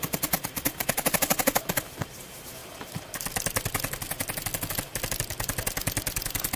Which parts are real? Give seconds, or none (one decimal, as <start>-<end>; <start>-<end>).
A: 0.0-6.6